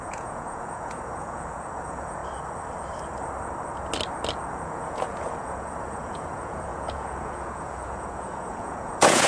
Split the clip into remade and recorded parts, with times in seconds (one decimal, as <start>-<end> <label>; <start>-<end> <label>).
0.0-2.2 remade; 2.2-4.5 recorded; 4.5-9.3 remade